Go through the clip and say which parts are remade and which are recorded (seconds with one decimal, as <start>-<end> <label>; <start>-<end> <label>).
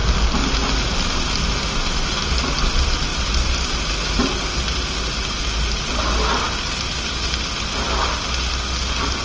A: 0.0-9.2 recorded